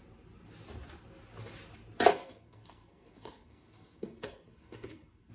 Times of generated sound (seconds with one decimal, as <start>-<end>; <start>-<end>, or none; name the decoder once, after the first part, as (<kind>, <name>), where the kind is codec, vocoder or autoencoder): 2.1-5.3 (codec, SNAC)